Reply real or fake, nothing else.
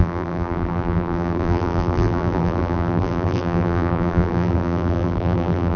fake